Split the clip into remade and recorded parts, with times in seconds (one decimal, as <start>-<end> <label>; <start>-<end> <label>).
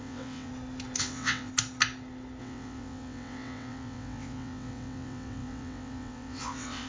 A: 0.0-0.5 remade; 0.5-1.0 recorded; 1.0-1.5 remade; 1.5-2.4 recorded; 2.4-6.9 remade